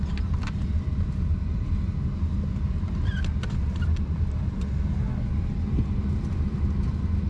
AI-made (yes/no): no